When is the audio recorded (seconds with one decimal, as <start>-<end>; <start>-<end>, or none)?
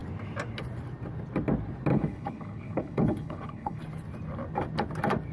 0.0-1.9; 3.8-5.3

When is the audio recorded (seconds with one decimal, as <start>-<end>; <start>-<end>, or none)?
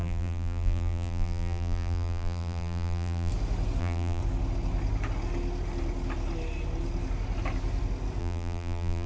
3.3-3.8; 4.2-8.2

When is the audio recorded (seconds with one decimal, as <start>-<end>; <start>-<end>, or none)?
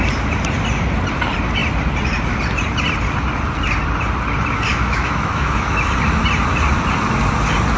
0.0-4.7; 5.9-7.8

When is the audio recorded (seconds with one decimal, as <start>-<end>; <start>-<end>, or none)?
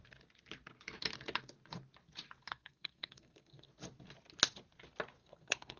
0.0-2.4; 3.7-5.2